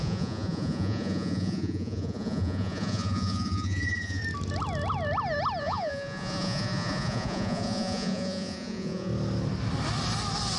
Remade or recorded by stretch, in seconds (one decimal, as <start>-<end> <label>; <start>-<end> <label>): 0.0-4.2 remade; 4.2-5.6 recorded; 5.6-9.1 remade; 9.1-10.6 recorded